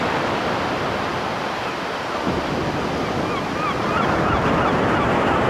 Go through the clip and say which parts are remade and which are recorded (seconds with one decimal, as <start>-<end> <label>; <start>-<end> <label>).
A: 0.0-5.5 recorded